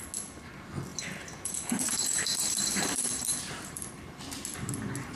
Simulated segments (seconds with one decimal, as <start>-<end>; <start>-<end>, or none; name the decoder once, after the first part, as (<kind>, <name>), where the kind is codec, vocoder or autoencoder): 0.9-4.0 (vocoder, BigVGAN v2)